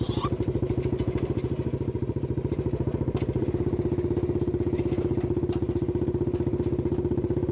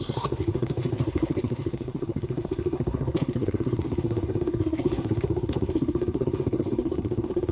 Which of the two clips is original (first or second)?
first